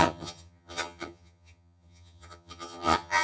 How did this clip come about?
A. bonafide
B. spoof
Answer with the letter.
B